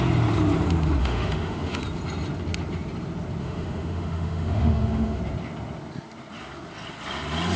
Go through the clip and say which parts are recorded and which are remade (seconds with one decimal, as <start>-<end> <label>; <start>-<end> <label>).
0.0-1.0 recorded; 1.0-1.8 remade; 1.8-3.4 recorded; 3.4-5.2 remade; 5.2-7.6 recorded